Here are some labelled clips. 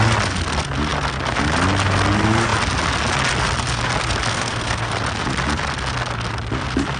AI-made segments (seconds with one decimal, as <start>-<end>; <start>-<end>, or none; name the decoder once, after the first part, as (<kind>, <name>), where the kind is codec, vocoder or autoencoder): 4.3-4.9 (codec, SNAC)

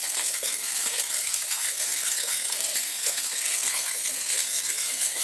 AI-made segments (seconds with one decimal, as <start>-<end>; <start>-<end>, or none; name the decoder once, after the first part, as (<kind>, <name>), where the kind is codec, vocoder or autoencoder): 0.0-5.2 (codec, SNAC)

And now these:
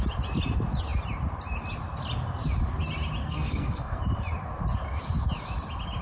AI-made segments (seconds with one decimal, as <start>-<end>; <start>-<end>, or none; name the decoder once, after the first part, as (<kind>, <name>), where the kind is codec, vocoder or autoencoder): 3.2-4.0 (codec, SNAC)